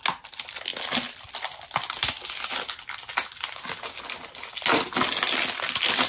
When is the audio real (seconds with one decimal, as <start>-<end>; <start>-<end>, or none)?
0.0-6.1